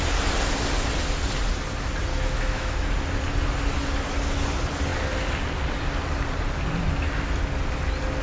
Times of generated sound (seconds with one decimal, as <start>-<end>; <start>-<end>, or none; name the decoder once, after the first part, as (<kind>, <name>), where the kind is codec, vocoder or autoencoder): 2.1-2.9 (autoencoder, DAC-VAE)